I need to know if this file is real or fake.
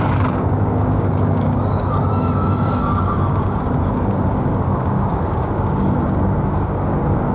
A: fake